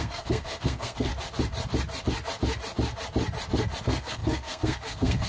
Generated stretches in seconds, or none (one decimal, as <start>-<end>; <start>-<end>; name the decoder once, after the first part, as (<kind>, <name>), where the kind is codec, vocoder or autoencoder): 0.0-1.1 (codec, SNAC); 3.8-5.3